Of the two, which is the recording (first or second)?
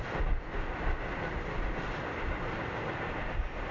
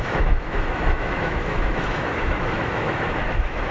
first